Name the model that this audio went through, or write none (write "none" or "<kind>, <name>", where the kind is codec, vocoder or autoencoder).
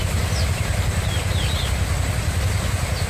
none